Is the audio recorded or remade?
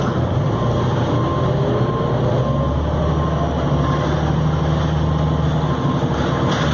recorded